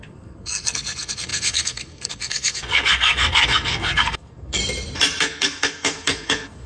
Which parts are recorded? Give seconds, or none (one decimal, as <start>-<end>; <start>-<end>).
4.6-5.2